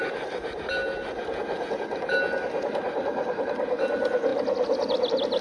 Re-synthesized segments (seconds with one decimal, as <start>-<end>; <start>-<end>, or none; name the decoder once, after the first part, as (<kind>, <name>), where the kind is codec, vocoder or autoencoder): none